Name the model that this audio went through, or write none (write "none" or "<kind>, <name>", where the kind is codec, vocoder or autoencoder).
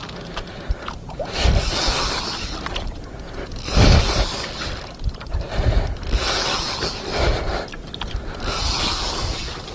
none